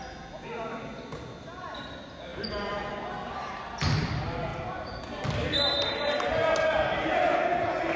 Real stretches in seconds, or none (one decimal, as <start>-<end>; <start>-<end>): 0.0-4.5; 5.0-8.0